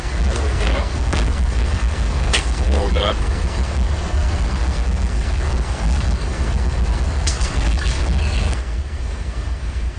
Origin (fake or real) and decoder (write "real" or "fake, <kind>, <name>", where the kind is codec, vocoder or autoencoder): fake, codec, SNAC